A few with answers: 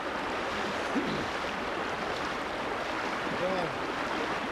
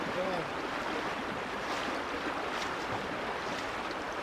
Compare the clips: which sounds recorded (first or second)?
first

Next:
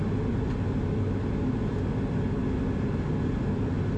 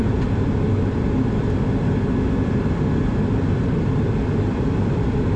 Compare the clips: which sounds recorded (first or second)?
first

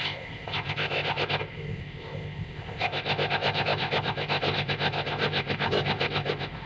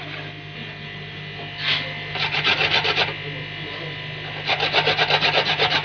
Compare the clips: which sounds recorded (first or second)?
second